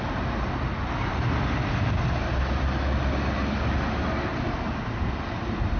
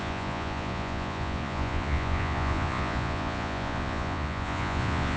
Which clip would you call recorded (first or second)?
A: first